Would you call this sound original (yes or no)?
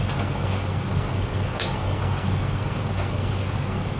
no